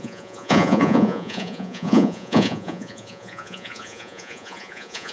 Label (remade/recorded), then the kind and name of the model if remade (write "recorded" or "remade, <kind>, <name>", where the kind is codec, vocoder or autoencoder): remade, vocoder, Vocos